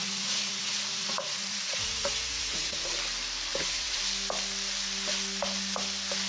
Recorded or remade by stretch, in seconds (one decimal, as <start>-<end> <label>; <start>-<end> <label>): 0.0-2.9 remade; 2.9-3.5 recorded; 3.5-4.0 remade; 4.0-6.3 recorded